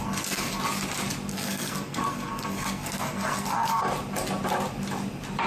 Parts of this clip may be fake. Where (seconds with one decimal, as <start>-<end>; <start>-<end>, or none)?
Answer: 0.0-0.6; 1.3-3.9